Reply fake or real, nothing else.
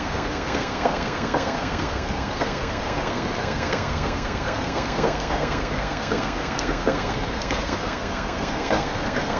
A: fake